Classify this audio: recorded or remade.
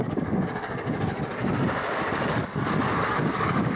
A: remade